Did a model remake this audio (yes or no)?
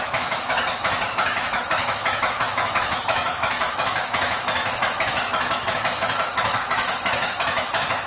yes